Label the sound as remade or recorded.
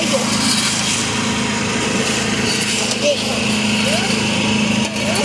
recorded